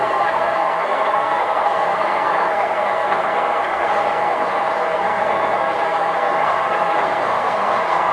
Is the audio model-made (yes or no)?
yes